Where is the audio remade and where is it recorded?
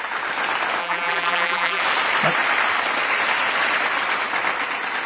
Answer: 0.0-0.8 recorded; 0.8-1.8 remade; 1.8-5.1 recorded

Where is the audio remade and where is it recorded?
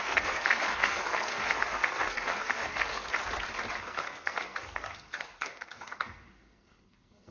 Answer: 0.0-3.1 remade; 3.1-3.7 recorded; 3.7-7.3 remade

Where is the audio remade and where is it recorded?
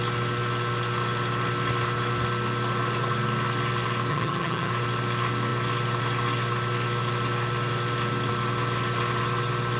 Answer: 0.0-4.1 recorded; 4.1-4.7 remade; 4.7-9.8 recorded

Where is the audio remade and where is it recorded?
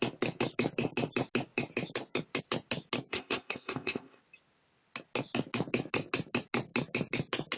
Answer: 0.0-3.1 recorded; 3.1-4.2 remade; 4.2-7.6 recorded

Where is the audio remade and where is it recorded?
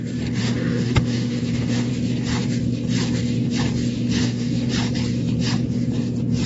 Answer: 0.0-0.4 recorded; 0.4-1.9 remade; 1.9-4.2 recorded; 4.2-4.7 remade; 4.7-6.5 recorded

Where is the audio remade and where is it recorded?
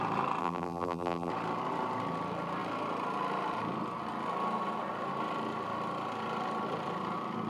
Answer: 0.0-0.4 recorded; 0.4-1.3 remade; 1.3-7.5 recorded